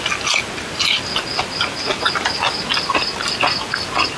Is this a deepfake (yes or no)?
no